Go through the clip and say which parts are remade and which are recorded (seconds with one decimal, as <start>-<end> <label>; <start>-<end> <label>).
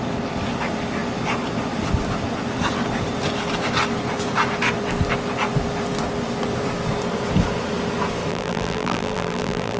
0.0-8.3 recorded; 8.3-9.8 remade